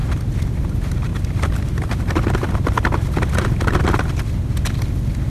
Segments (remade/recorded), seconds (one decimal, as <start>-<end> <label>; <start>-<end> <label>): 0.0-1.1 recorded; 1.1-4.3 remade; 4.3-5.3 recorded